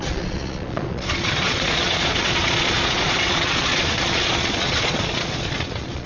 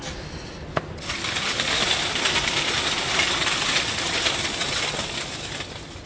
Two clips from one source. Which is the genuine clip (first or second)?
second